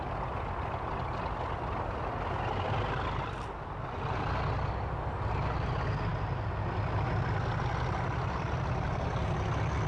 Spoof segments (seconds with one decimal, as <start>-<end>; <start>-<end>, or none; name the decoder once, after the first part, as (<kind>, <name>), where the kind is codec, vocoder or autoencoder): none